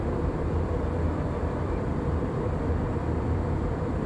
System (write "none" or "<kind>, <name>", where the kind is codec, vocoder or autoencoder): vocoder, BigVGAN v2